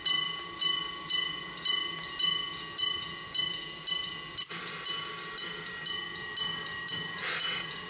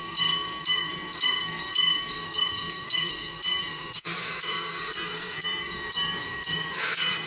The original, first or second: first